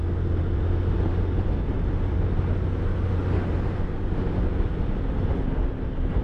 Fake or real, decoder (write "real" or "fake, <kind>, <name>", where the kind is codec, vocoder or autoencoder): real